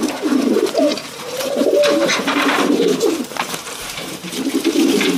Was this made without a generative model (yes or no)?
no